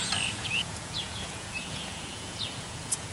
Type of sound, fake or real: fake